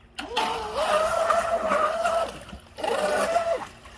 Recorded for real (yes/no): yes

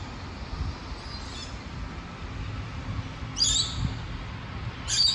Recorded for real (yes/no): yes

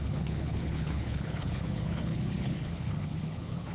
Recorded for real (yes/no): no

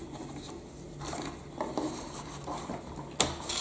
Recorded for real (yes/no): yes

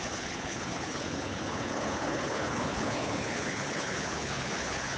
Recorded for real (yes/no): no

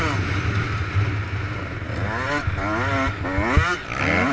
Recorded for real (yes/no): yes